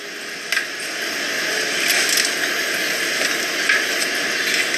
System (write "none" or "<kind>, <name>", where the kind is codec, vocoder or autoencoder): none